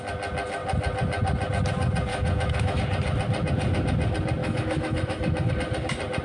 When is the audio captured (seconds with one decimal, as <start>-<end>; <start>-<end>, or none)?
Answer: 0.0-2.1; 2.8-4.4; 5.5-6.2